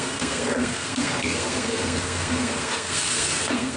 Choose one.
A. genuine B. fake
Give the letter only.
B